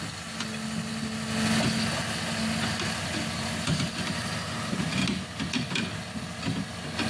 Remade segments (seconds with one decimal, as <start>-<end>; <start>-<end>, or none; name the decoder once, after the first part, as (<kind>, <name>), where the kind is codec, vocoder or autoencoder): none